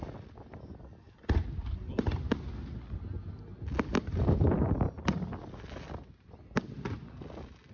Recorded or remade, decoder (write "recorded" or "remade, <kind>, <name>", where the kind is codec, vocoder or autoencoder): recorded